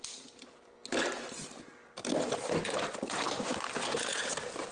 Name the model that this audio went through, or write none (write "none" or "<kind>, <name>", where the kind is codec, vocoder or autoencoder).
none